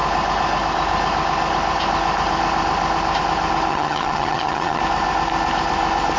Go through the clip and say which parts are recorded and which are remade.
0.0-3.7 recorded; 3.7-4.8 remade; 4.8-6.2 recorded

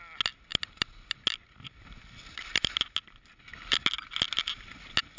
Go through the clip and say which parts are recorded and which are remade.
0.0-5.2 recorded

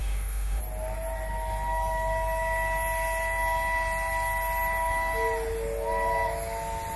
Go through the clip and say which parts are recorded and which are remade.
0.0-0.6 remade; 0.6-7.0 recorded

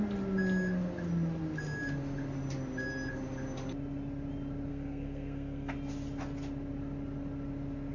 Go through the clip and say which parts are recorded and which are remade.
0.0-4.7 recorded; 4.7-5.7 remade; 5.7-7.9 recorded

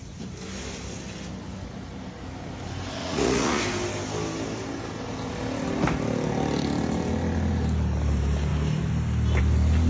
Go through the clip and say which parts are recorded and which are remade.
0.0-3.0 recorded; 3.0-3.6 remade; 3.6-9.9 recorded